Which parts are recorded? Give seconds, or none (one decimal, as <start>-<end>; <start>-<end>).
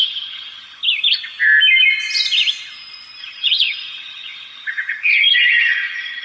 0.8-3.2